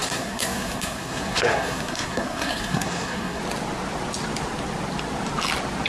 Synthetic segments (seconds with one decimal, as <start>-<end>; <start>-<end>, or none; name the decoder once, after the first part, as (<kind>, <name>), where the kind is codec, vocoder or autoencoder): 0.0-3.4 (codec, SNAC)